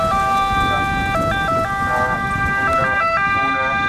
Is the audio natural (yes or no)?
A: yes